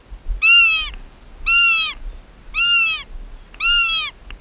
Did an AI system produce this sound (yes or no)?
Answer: no